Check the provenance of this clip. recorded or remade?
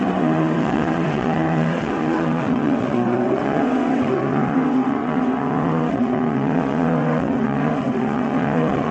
remade